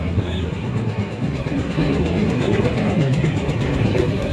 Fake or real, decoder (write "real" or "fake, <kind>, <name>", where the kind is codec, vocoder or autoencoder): fake, codec, SNAC